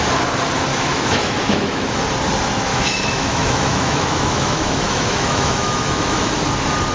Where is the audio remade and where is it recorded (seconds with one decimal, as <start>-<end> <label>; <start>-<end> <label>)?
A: 0.0-0.7 recorded; 0.7-2.0 remade; 2.0-2.7 recorded; 2.7-6.3 remade; 6.3-6.9 recorded